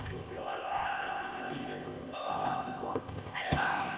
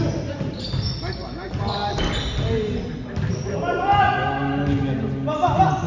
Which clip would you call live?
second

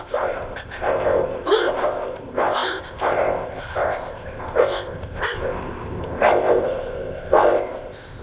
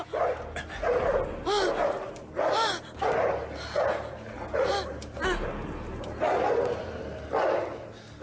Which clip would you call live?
second